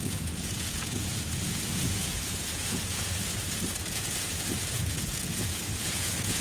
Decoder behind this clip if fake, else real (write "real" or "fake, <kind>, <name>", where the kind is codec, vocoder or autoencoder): fake, vocoder, Vocos